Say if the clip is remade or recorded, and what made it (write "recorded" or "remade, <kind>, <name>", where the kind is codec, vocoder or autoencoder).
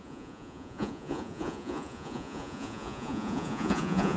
remade, vocoder, Vocos